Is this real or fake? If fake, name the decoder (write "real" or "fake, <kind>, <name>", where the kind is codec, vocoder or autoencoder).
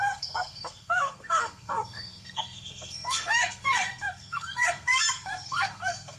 fake, codec, SNAC